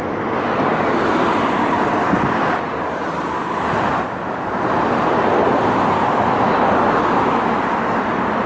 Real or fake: fake